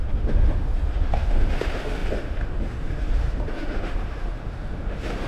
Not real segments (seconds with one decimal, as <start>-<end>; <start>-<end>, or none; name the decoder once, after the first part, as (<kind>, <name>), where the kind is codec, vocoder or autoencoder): 0.0-5.3 (autoencoder, DAC-VAE)